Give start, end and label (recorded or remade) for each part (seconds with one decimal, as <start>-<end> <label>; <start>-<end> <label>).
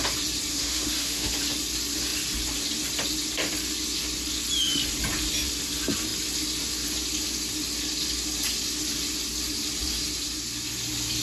0.0-0.5 recorded; 0.5-1.3 remade; 1.3-11.2 recorded